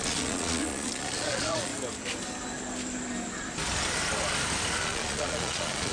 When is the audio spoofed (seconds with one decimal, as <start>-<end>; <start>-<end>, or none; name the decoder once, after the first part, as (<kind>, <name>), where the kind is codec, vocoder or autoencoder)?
0.0-1.7 (vocoder, Vocos); 4.8-5.9